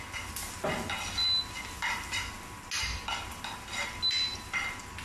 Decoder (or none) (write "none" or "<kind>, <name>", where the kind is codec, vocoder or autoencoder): none